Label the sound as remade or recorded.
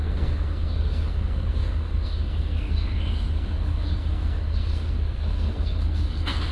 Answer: remade